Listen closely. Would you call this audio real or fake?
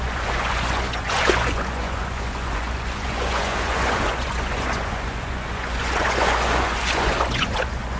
fake